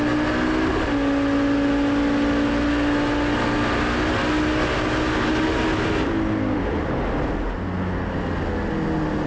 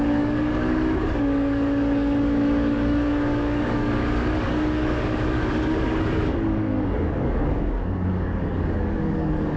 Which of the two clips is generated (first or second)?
second